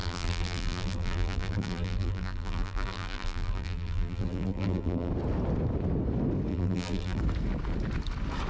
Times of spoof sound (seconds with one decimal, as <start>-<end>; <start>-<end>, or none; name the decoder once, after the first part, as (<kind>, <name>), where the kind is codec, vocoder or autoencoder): 0.0-5.1 (vocoder, BigVGAN v2); 6.5-7.2